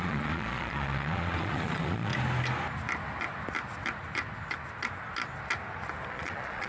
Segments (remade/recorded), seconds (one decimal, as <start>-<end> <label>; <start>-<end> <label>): 0.0-2.1 remade; 2.1-6.1 recorded; 6.1-6.7 remade

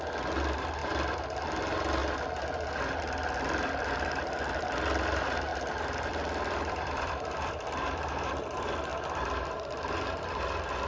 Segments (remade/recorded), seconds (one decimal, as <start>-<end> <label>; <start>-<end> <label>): 0.0-5.5 recorded; 5.5-8.3 remade; 8.3-8.9 recorded; 8.9-9.6 remade; 9.6-10.9 recorded

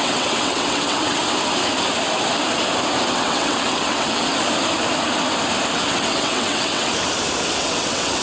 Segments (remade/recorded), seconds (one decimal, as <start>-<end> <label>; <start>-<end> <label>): 0.0-1.2 remade; 1.2-3.1 recorded; 3.1-4.3 remade; 4.3-5.7 recorded; 5.7-6.9 remade; 6.9-7.6 recorded; 7.6-8.2 remade

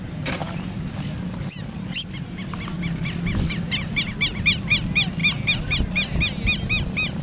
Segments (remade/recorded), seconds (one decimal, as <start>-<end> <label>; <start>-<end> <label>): 0.0-7.2 recorded

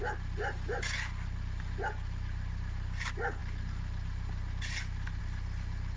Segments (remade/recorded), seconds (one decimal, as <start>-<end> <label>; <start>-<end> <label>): 0.0-6.0 recorded

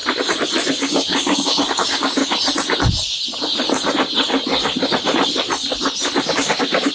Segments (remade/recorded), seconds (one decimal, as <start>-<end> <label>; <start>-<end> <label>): 0.0-0.8 recorded; 0.8-2.2 remade; 2.2-6.3 recorded; 6.3-6.9 remade

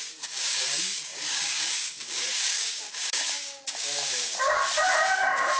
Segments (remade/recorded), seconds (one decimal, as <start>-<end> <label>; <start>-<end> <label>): 0.0-4.6 remade; 4.6-5.6 recorded